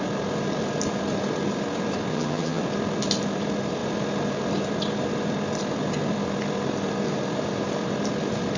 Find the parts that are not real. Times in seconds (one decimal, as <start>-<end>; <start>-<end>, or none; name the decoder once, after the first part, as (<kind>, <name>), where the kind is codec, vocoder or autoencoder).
2.1-2.6 (vocoder, HiFi-GAN)